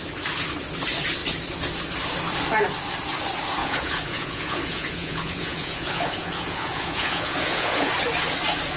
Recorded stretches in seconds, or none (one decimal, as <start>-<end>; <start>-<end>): 0.0-3.6; 7.9-8.8